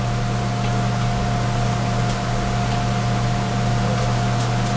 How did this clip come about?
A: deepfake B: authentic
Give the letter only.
B